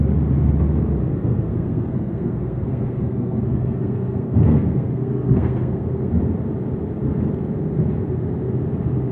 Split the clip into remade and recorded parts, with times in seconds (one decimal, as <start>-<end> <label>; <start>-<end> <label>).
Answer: 0.0-1.1 recorded; 1.1-6.1 remade; 6.1-9.1 recorded